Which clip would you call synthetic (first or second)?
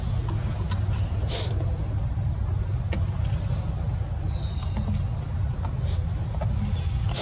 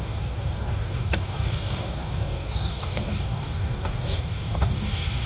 second